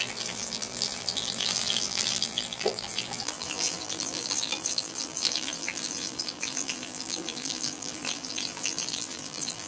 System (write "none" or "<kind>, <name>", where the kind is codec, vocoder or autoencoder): vocoder, BigVGAN v2